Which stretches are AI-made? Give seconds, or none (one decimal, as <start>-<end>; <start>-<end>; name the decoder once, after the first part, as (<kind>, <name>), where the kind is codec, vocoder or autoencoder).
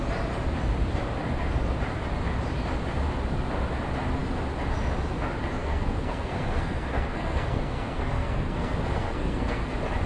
5.6-9.7 (codec, SNAC)